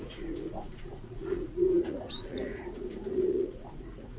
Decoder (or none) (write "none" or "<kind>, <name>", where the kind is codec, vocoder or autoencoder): vocoder, Vocos